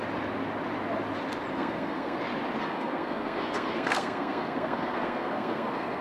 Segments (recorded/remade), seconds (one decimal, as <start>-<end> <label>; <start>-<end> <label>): 0.0-1.5 recorded; 1.5-2.2 remade; 2.2-2.6 recorded; 2.6-6.0 remade